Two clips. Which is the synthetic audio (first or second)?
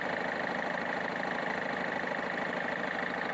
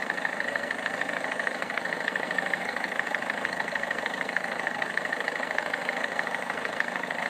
second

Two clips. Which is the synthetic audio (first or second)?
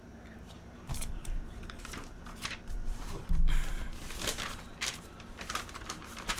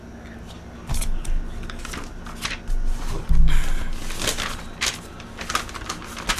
first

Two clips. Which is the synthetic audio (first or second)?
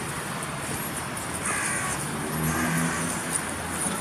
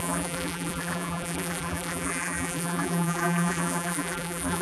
second